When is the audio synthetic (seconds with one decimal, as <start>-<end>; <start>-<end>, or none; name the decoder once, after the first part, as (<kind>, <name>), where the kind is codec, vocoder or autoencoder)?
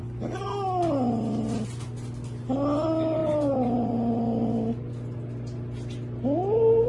3.2-4.2 (vocoder, BigVGAN v2)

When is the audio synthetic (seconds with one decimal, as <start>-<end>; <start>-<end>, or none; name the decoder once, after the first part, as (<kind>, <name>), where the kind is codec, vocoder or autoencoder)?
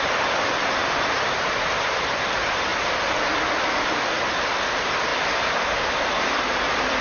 0.0-2.7 (vocoder, BigVGAN v2); 3.8-5.1; 6.1-7.0